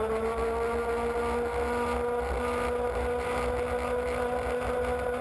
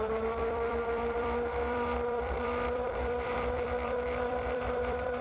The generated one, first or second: second